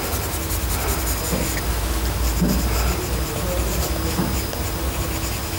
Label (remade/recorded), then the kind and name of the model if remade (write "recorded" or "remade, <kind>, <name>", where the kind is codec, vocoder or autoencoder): recorded